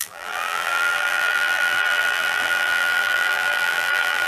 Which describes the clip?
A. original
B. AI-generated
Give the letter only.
B